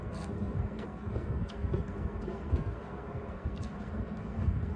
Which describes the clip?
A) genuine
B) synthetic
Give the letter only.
B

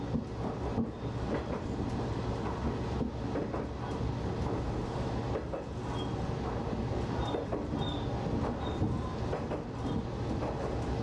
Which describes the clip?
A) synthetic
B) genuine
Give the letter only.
B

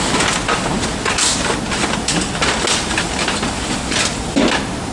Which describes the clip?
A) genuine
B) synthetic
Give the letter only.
A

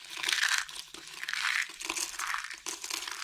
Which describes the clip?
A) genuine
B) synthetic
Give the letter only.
A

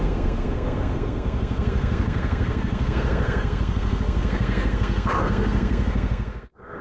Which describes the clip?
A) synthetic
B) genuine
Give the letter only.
A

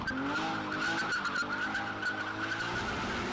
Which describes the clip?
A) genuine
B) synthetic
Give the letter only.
A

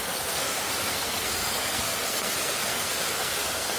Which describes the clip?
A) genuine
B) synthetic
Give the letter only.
B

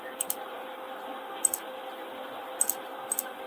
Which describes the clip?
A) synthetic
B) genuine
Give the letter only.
B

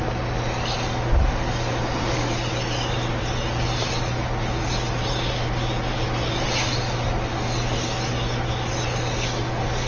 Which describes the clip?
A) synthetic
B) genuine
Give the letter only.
B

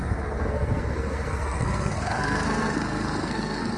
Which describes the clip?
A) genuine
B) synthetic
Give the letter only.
B